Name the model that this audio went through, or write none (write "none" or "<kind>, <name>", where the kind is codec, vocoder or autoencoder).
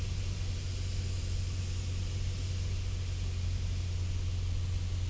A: none